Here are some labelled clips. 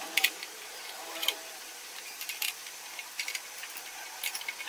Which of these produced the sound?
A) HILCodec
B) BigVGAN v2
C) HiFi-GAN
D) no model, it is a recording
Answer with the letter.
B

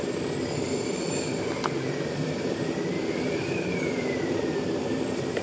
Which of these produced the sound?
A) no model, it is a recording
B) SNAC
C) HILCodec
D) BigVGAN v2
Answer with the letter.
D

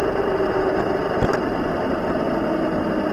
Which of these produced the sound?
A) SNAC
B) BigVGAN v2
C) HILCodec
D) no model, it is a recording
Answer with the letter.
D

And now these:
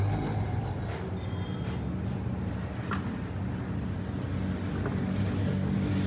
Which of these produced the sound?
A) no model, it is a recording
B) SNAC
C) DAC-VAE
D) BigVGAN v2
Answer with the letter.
A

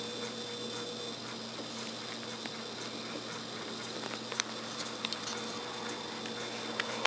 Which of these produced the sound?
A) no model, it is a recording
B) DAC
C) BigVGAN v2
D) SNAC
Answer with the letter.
A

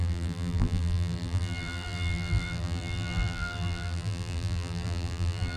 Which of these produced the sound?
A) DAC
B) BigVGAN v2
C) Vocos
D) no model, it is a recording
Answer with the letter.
B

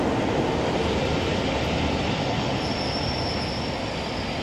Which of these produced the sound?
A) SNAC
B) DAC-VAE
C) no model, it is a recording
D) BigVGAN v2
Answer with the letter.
C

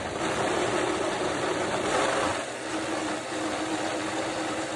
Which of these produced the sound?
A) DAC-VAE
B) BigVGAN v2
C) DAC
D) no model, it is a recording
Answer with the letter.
B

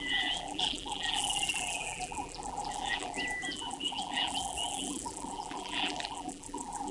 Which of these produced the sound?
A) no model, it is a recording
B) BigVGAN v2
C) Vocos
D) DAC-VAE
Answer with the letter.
B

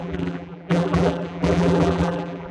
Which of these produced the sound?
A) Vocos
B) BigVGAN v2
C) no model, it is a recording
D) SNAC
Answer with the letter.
B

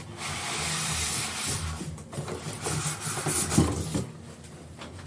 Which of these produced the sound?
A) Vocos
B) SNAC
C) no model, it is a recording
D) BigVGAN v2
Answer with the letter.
C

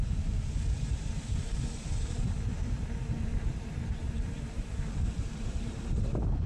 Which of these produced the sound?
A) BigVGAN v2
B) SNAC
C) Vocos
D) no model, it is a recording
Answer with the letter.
A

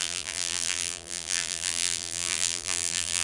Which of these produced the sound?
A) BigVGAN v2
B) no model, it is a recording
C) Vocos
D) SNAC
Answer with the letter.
A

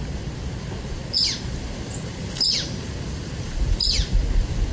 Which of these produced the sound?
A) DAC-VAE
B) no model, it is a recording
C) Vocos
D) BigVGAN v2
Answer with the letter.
B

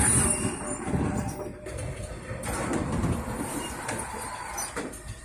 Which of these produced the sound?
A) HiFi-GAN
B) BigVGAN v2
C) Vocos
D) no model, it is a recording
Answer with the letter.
B